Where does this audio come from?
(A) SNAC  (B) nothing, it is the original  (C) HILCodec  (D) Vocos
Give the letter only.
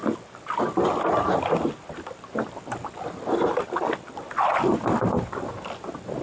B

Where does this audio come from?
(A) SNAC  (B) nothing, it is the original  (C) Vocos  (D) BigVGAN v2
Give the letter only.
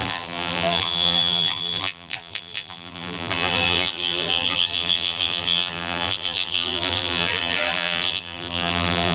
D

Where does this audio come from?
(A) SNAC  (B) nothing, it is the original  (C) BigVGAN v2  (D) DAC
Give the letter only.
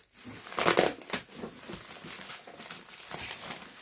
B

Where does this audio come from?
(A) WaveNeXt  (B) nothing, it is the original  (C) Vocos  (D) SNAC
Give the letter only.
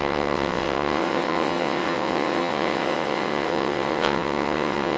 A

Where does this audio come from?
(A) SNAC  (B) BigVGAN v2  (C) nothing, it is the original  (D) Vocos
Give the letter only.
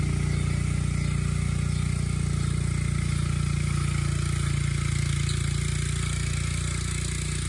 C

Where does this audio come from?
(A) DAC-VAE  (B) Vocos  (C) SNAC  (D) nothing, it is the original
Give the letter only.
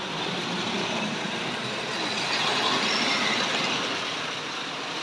D